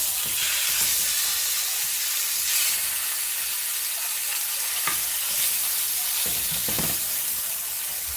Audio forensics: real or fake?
real